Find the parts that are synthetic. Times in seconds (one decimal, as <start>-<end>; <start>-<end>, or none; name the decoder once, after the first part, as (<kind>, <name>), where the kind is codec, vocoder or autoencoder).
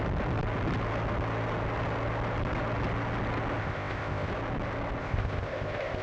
3.6-4.3 (codec, ZipCodec); 5.0-6.0